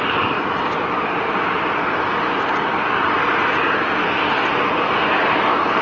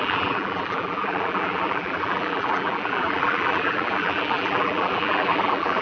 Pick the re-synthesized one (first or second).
second